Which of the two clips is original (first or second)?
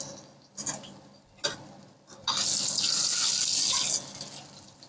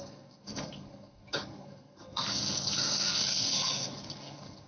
first